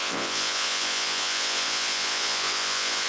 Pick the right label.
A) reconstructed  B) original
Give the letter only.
A